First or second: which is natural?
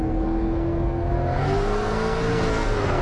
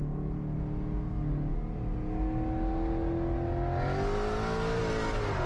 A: second